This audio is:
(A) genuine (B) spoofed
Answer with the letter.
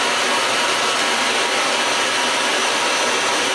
A